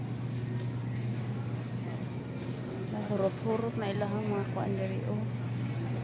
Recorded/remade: recorded